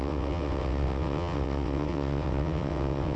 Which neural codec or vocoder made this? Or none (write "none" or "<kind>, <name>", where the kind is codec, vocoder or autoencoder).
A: vocoder, WaveNeXt